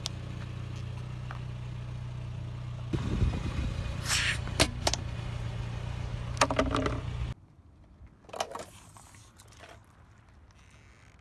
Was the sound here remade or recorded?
recorded